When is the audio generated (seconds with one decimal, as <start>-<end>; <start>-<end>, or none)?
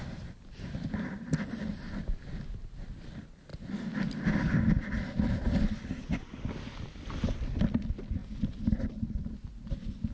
none